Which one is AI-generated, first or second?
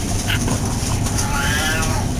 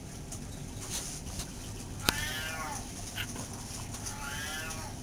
first